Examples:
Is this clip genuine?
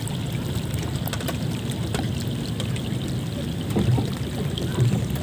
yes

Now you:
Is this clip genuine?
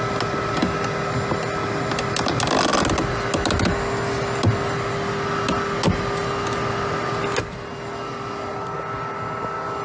yes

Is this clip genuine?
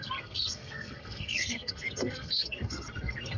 no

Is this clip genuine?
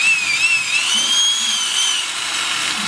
yes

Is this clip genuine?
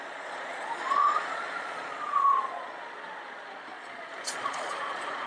no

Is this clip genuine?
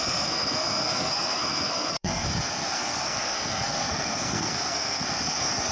no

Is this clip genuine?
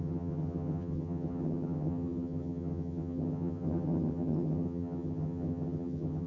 no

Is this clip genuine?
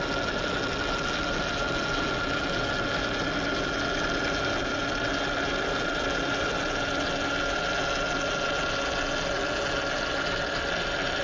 yes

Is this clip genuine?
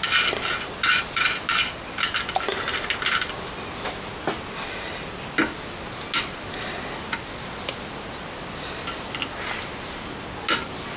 yes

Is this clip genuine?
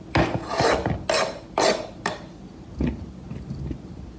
yes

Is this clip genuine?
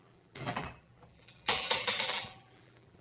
no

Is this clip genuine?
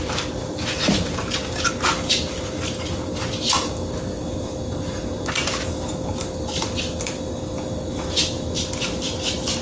yes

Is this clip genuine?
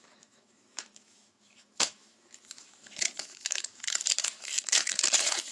no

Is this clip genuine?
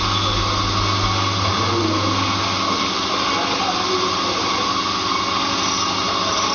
yes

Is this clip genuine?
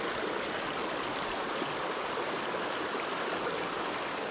yes